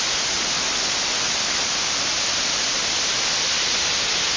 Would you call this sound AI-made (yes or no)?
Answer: no